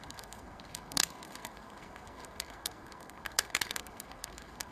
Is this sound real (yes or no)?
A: no